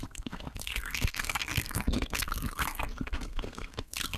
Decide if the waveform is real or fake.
fake